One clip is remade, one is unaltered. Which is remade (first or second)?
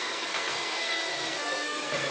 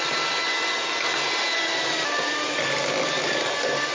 first